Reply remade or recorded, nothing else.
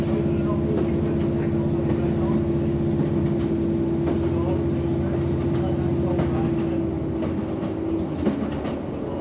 recorded